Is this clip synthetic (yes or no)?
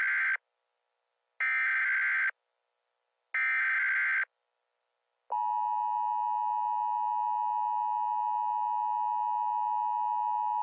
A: no